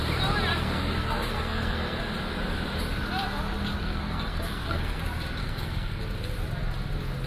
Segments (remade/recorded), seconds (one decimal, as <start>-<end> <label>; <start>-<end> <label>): 0.0-0.5 recorded; 0.5-2.0 remade; 2.0-3.8 recorded; 3.8-5.0 remade; 5.0-5.4 recorded; 5.4-6.0 remade; 6.0-7.3 recorded